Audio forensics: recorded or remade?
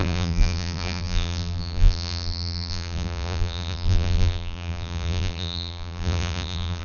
remade